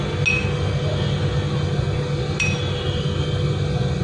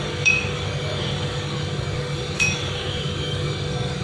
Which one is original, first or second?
first